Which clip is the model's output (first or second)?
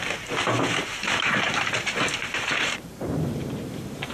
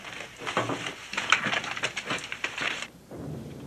first